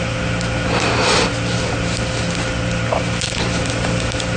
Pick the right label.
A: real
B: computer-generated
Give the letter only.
A